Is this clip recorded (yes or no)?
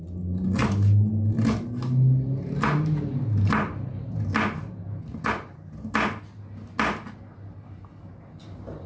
yes